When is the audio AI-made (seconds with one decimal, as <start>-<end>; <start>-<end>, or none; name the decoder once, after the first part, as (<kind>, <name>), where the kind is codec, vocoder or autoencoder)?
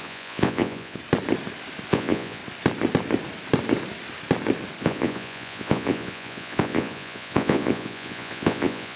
0.0-1.0 (vocoder, Vocos); 1.9-2.4; 4.8-9.0